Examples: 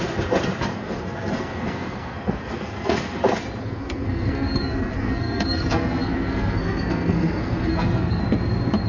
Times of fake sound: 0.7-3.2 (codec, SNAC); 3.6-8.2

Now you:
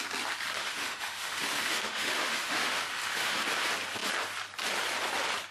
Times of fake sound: 0.6-3.4 (autoencoder, DAC-VAE)

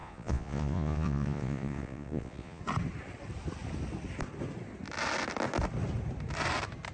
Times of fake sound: 0.0-2.6 (vocoder, Vocos)

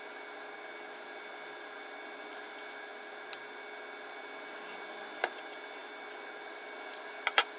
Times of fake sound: none

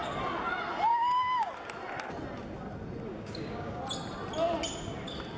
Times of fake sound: 0.9-1.5 (codec, DAC); 3.1-3.8

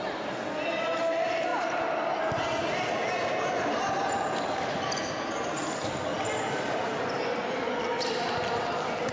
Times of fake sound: none